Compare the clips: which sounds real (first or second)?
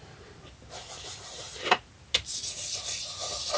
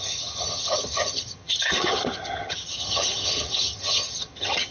first